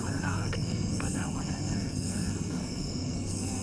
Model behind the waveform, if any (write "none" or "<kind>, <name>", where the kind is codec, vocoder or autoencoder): codec, SNAC